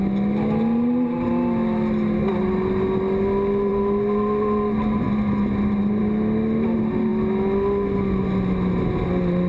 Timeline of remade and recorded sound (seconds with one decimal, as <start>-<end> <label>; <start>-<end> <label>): 0.0-9.5 recorded